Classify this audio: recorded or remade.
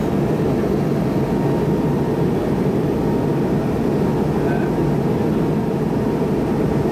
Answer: recorded